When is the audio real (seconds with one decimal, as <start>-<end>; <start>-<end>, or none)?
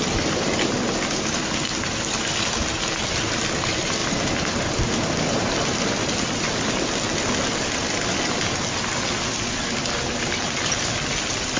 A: 0.0-4.0; 4.8-11.6